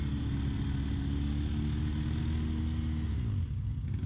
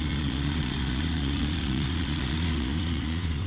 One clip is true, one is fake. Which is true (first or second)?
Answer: first